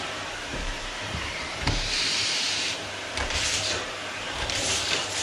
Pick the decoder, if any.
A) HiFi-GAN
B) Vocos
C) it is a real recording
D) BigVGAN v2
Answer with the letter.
D